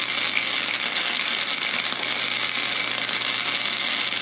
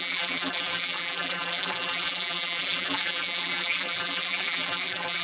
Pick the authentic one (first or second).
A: first